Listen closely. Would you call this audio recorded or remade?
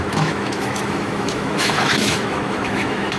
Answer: remade